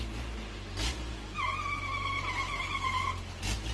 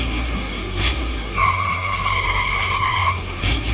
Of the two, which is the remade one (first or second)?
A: second